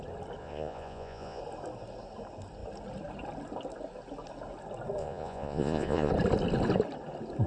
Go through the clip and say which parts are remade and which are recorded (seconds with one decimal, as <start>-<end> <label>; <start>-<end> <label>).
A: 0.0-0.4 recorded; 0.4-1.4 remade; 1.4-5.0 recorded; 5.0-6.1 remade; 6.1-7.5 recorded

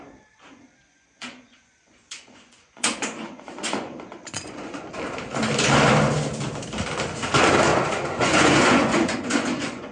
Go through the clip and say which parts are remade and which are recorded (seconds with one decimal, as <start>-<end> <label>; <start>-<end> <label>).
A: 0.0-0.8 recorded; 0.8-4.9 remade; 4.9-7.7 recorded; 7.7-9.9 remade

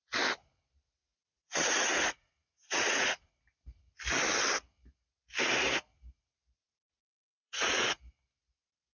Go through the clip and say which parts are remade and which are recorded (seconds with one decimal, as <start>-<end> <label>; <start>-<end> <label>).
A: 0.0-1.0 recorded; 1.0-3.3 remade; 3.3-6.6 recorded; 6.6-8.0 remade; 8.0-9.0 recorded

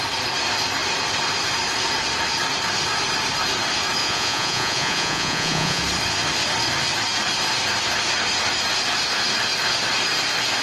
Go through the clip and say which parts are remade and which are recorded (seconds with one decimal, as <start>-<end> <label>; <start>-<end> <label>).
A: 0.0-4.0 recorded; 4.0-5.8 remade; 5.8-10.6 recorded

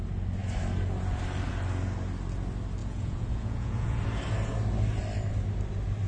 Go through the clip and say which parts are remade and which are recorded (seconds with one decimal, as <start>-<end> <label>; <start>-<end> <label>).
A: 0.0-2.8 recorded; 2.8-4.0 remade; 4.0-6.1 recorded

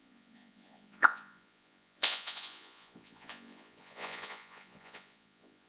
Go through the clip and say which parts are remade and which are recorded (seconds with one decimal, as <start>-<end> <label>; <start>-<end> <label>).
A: 0.0-5.7 remade

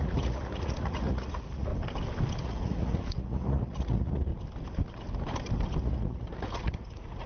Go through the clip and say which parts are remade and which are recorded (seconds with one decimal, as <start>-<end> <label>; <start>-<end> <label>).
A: 0.0-1.7 remade; 1.7-2.4 recorded; 2.4-4.3 remade; 4.3-5.8 recorded; 5.8-7.3 remade

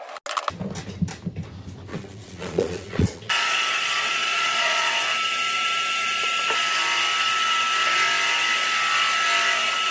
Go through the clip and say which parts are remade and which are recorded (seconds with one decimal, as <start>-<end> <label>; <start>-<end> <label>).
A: 0.0-1.9 recorded; 1.9-4.9 remade; 4.9-9.9 recorded